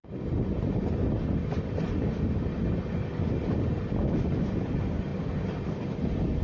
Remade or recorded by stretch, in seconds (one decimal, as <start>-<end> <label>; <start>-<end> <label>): 0.0-6.4 recorded